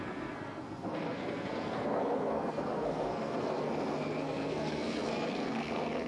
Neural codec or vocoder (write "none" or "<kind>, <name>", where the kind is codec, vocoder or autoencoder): codec, SNAC